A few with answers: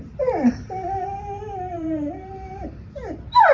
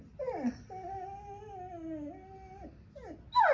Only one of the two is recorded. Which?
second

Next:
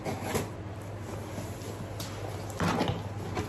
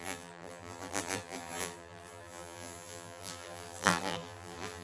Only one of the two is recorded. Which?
first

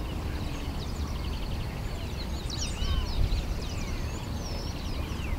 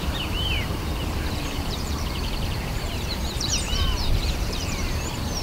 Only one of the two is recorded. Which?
first